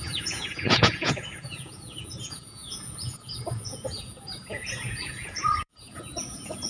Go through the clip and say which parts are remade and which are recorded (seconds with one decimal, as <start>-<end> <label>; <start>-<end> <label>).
0.0-6.7 remade